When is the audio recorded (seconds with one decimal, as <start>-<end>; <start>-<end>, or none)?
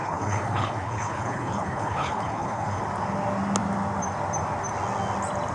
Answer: 2.8-5.5